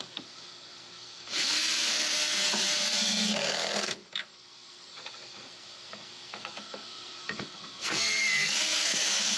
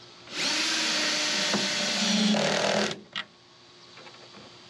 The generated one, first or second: first